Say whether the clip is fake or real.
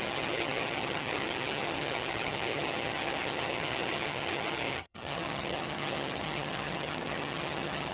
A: fake